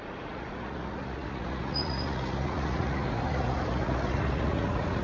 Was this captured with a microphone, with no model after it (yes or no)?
no